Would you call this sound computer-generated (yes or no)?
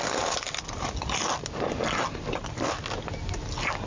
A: no